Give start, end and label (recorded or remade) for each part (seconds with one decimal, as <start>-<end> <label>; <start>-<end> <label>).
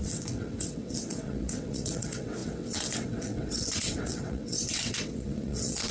0.0-5.9 remade